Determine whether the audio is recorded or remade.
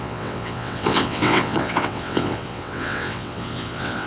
remade